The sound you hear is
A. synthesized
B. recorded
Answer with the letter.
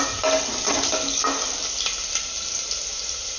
B